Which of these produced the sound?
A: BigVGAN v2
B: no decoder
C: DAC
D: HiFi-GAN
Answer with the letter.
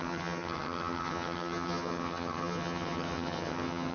D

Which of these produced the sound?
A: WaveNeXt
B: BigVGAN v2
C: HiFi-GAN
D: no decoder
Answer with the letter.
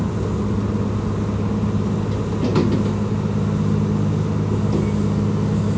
D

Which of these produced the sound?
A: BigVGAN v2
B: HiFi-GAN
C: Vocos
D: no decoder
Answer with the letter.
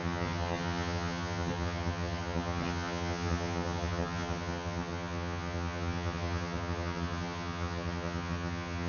B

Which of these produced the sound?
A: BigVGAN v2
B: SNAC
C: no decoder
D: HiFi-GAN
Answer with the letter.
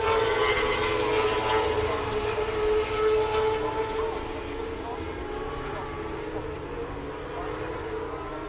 C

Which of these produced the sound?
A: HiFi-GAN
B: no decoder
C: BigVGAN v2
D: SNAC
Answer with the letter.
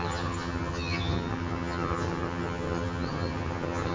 A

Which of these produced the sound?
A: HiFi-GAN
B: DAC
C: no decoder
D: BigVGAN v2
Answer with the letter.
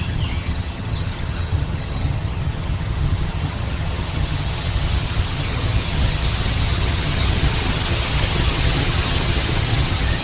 A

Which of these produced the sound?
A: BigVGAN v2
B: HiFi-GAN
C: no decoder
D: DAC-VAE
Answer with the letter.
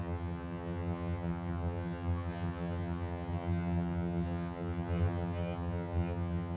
B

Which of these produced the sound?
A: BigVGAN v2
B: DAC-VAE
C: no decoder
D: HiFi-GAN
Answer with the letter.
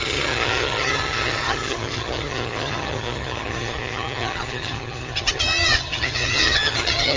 D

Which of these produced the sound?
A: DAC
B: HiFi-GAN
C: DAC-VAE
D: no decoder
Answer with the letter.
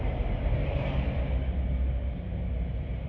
D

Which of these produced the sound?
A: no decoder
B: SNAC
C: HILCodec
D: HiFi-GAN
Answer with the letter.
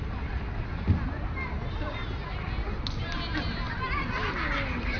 A